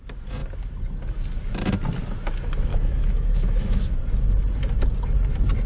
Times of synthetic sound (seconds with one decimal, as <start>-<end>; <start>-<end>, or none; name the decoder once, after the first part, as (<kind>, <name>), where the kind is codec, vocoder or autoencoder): 2.7-4.0 (autoencoder, DAC-VAE)